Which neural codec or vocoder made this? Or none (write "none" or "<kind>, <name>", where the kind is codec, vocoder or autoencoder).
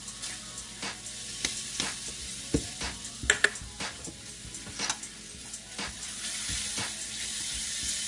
none